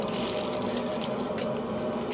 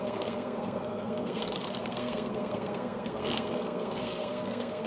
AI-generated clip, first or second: second